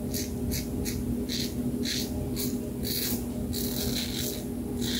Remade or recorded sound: recorded